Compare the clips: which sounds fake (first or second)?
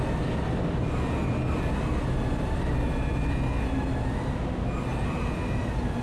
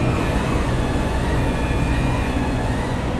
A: second